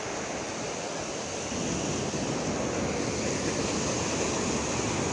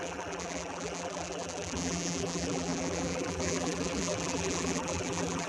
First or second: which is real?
first